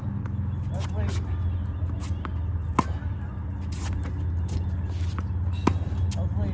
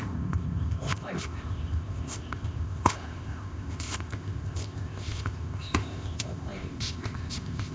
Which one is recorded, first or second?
first